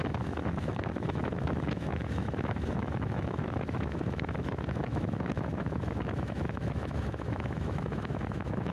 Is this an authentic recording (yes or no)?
no